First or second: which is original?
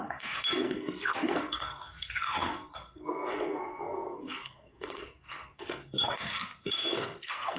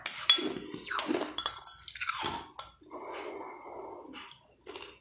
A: second